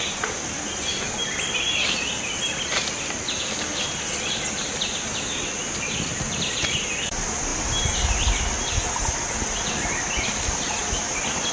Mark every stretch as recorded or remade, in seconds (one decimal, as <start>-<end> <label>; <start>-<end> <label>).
0.0-11.5 recorded